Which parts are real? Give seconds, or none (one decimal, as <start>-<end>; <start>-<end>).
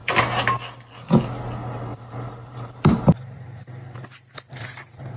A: 0.0-1.9